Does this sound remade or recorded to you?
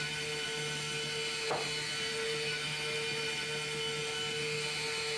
recorded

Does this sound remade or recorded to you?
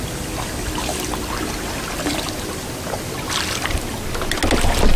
recorded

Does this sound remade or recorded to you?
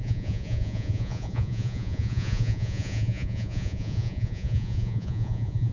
remade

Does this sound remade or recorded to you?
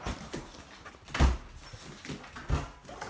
recorded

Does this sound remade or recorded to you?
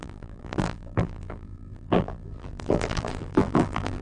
remade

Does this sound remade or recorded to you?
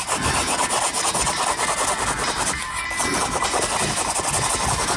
recorded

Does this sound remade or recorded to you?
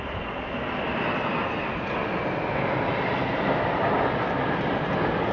recorded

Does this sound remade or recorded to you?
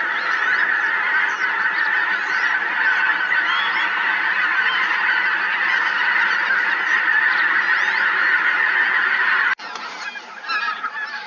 recorded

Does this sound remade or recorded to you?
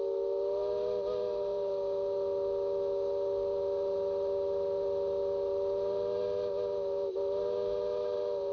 recorded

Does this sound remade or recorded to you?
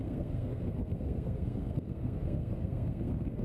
remade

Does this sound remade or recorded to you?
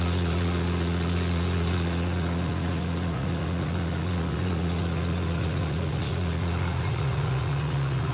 remade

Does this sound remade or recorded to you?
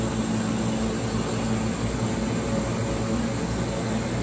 recorded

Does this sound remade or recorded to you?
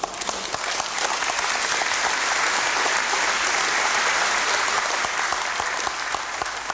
recorded